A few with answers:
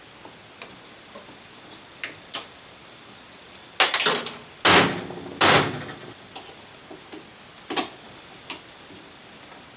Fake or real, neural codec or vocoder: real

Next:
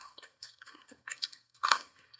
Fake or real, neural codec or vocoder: fake, codec, SNAC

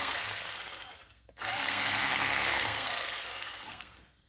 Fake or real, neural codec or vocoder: fake, codec, SNAC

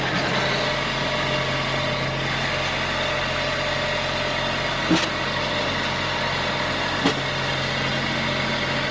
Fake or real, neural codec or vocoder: real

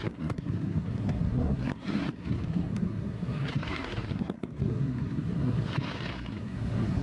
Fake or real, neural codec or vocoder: fake, codec, SNAC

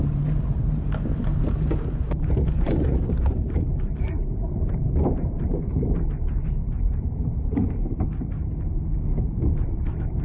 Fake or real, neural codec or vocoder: fake, vocoder, BigVGAN v2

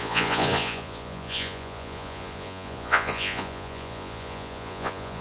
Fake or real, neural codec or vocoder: fake, vocoder, Vocos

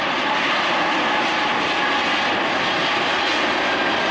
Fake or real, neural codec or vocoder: real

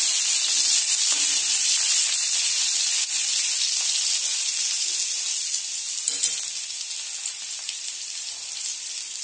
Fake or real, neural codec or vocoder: real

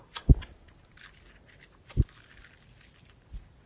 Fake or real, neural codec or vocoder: real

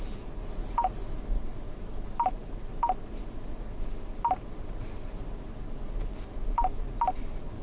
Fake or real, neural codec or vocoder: real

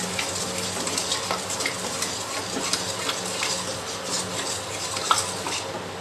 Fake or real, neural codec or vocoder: real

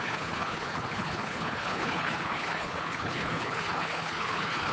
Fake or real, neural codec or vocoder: fake, codec, HILCodec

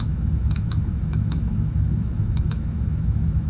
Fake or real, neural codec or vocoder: fake, autoencoder, DAC-VAE